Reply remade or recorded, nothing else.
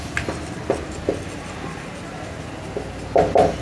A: recorded